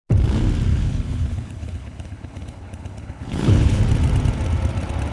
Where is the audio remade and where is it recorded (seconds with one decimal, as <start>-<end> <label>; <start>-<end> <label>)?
0.0-0.7 recorded; 0.7-3.8 remade; 3.8-5.1 recorded